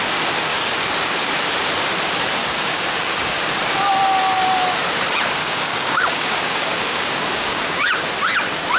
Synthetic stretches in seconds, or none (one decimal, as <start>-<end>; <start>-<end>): 0.5-1.3; 2.4-3.5; 5.4-7.9